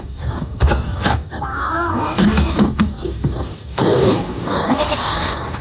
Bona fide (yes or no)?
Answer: no